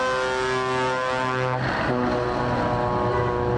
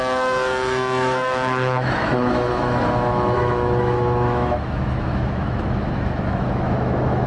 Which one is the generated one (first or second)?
second